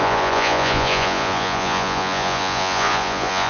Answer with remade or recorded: remade